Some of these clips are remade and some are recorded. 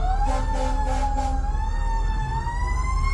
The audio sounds recorded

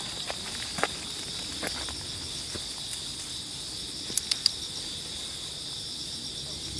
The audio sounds recorded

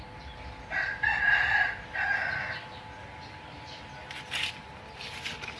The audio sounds recorded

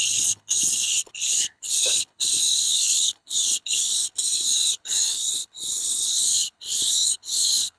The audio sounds remade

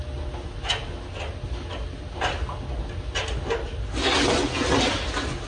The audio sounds recorded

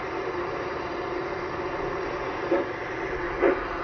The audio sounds recorded